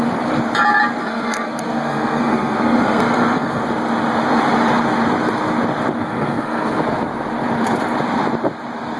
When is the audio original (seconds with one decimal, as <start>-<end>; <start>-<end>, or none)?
0.0-1.0; 3.6-6.0; 6.8-9.0